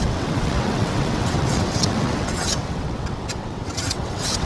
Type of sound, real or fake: fake